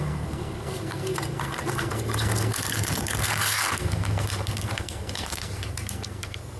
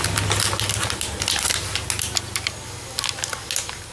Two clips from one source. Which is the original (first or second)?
second